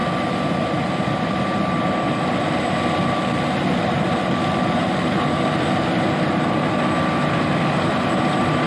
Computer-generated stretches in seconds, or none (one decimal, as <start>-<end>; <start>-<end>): none

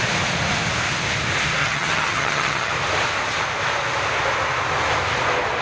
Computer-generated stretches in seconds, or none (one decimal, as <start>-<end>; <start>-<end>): 1.6-2.7

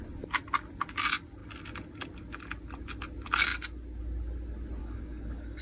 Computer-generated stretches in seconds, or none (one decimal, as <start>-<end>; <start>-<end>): 4.8-5.6

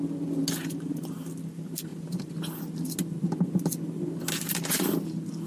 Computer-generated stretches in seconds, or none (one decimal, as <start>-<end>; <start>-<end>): none

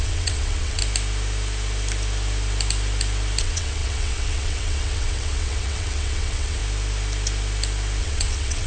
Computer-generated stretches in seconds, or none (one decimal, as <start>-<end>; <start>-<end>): 0.0-0.8; 3.4-6.6; 8.0-8.7